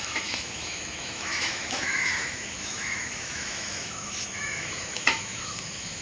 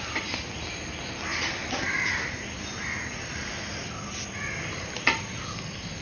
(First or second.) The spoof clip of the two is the first